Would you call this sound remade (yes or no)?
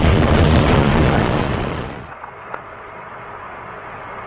yes